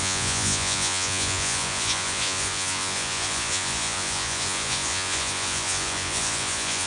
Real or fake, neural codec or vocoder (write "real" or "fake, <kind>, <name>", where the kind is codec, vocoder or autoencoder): fake, vocoder, Vocos